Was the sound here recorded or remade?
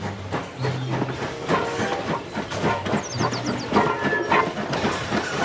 recorded